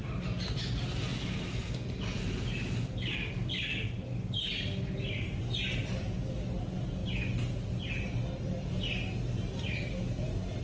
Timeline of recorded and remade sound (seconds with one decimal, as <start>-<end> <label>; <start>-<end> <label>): 0.0-10.6 recorded